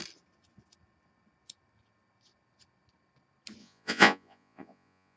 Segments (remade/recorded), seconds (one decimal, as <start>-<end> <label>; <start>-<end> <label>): 0.0-3.6 recorded; 3.6-5.2 remade